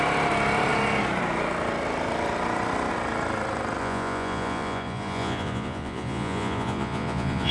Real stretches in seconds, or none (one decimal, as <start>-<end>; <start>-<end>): 0.0-3.8